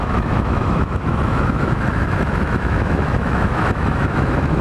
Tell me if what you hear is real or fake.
fake